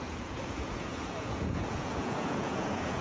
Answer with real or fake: fake